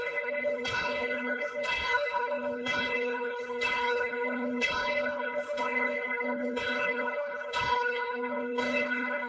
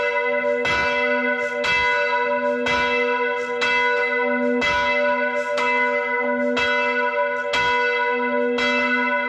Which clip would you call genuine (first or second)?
second